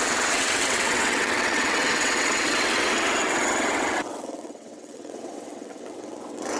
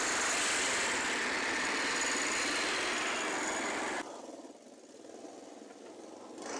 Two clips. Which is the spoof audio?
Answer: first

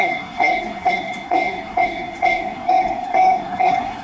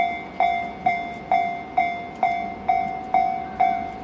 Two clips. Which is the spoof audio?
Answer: first